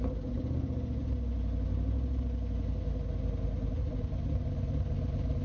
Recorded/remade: recorded